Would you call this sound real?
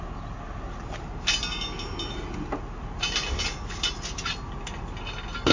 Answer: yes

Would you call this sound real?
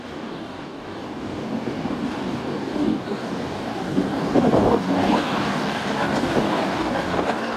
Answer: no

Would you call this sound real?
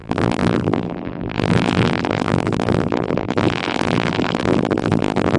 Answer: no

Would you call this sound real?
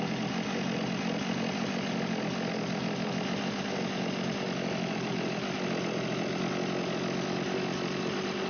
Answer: yes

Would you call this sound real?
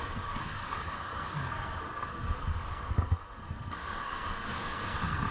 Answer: no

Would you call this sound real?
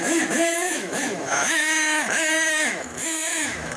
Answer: no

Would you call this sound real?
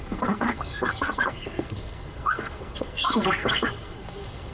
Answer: no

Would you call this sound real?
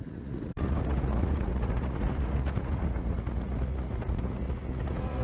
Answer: no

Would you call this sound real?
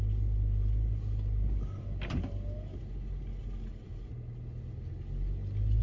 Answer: yes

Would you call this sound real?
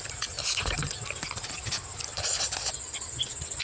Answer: yes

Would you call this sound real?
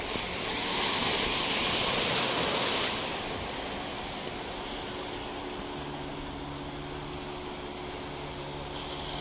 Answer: yes